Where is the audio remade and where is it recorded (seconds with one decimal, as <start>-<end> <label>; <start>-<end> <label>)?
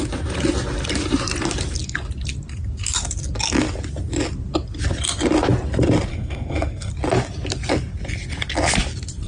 0.0-6.1 recorded; 6.1-6.9 remade; 6.9-9.3 recorded